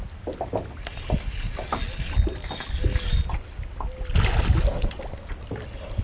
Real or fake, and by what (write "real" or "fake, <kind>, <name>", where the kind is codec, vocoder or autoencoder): real